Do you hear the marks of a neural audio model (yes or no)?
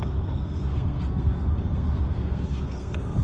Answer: yes